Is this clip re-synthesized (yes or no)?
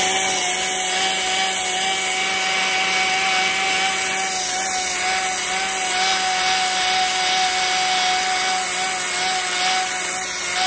no